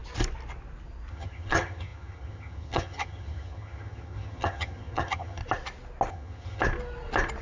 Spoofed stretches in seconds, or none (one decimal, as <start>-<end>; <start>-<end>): 1.1-5.4; 6.1-6.6